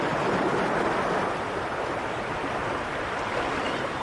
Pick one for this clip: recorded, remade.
recorded